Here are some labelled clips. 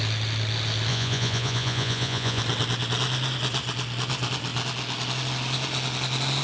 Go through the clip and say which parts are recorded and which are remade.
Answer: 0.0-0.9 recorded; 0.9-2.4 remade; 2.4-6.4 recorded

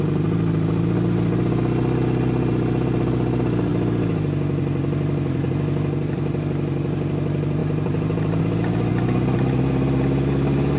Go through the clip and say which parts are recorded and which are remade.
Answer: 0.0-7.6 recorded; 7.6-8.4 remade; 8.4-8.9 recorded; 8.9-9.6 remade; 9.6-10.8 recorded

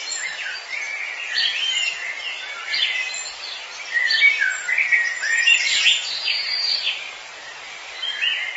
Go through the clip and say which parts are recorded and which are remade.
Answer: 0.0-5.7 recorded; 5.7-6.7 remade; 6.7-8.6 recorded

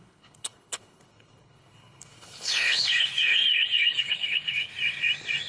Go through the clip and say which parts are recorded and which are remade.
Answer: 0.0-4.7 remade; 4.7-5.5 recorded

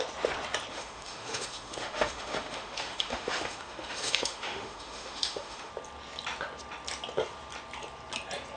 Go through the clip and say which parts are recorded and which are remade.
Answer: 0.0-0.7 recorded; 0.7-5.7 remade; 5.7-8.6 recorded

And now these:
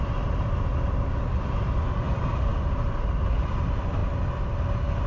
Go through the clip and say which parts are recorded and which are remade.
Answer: 0.0-4.0 remade; 4.0-5.1 recorded

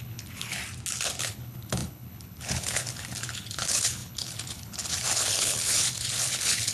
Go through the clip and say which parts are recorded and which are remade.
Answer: 0.0-0.6 remade; 0.6-1.2 recorded; 1.2-6.7 remade

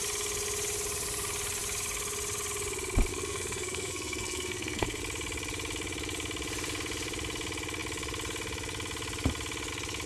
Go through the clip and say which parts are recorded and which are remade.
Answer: 0.0-3.1 recorded; 3.1-5.0 remade; 5.0-10.1 recorded